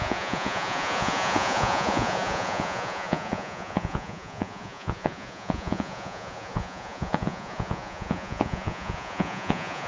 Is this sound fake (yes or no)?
yes